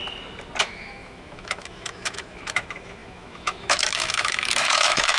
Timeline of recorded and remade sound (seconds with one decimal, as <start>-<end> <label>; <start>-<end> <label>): 0.0-0.6 recorded; 0.6-5.2 remade